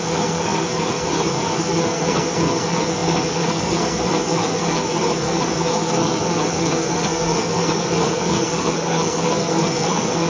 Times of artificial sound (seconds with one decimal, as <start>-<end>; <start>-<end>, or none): 0.0-10.3